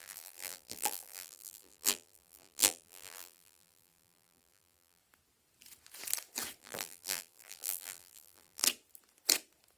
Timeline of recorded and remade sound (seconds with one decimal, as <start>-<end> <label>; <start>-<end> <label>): 0.0-5.0 remade; 5.0-6.6 recorded; 6.6-8.6 remade; 8.6-9.8 recorded